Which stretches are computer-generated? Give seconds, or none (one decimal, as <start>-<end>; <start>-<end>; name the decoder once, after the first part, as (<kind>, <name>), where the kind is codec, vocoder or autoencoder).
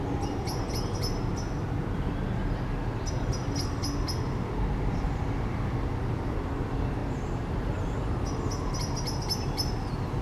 none